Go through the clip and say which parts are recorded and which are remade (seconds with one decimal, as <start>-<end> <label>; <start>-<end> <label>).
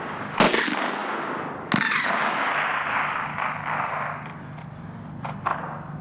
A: 0.0-6.0 recorded